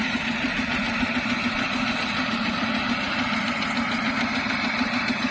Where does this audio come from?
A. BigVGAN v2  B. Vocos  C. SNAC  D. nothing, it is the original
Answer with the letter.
A